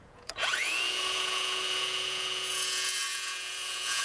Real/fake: fake